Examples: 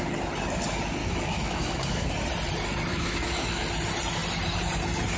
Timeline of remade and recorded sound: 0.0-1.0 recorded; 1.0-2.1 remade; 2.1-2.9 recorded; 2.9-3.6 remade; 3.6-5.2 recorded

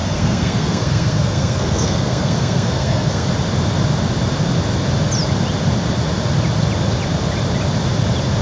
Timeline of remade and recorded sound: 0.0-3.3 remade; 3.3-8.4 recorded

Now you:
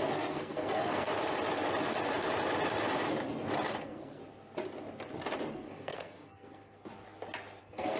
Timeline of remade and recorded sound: 0.0-1.1 remade; 1.1-3.8 recorded; 3.8-4.2 remade; 4.2-5.5 recorded; 5.5-6.9 remade; 6.9-7.6 recorded; 7.6-8.0 remade

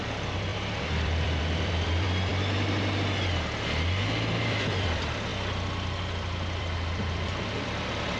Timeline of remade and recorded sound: 0.0-2.3 remade; 2.3-4.4 recorded; 4.4-5.3 remade; 5.3-6.0 recorded; 6.0-8.2 remade

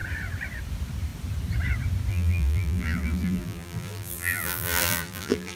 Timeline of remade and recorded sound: 0.0-2.1 recorded; 2.1-5.6 remade

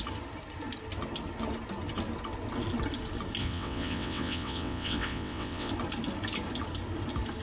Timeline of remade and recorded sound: 0.0-3.4 recorded; 3.4-5.7 remade; 5.7-7.4 recorded

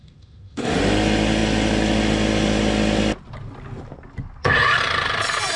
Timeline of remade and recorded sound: 0.0-0.8 remade; 0.8-5.6 recorded

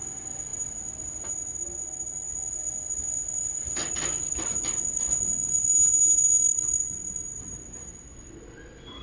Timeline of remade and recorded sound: 0.0-6.5 recorded; 6.5-7.2 remade; 7.2-9.0 recorded